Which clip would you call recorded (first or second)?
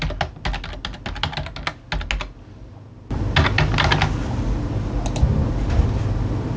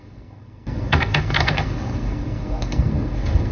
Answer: first